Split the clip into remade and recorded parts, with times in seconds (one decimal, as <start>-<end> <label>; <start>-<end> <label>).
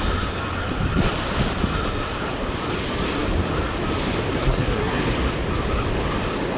0.0-4.4 recorded; 4.4-5.0 remade; 5.0-6.6 recorded